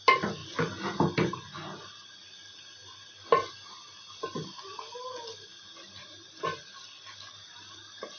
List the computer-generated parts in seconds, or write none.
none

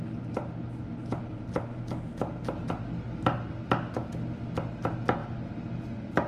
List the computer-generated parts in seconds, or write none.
none

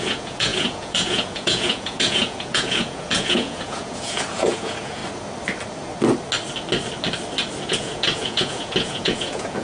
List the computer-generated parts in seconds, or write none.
0.0-5.0 (vocoder, Vocos); 7.7-9.6

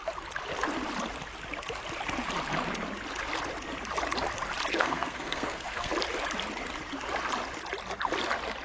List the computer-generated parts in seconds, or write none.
4.7-5.9 (codec, SNAC)

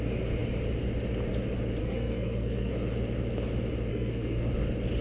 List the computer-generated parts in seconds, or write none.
1.8-2.7 (codec, SNAC); 3.9-4.5

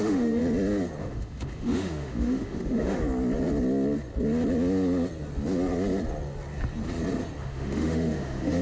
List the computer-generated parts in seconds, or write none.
0.0-0.4 (autoencoder, DAC-VAE); 1.0-3.0; 7.4-8.6